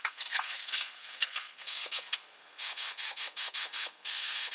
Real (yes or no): no